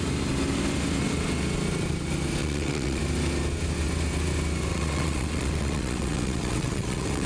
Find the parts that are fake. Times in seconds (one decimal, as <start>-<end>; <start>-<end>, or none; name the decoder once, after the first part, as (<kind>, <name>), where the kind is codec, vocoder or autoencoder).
2.4-3.0 (vocoder, WaveNeXt); 4.7-7.3